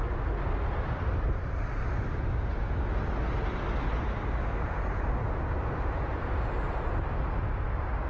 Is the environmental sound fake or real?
real